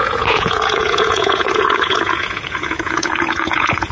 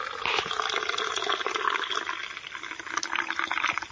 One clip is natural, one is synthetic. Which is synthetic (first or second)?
first